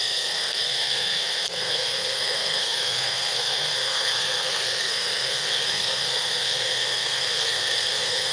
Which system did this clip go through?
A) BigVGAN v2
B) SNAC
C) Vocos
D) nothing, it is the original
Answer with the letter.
B